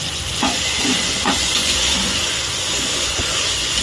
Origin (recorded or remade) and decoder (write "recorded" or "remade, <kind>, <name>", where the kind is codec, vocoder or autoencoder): remade, vocoder, Vocos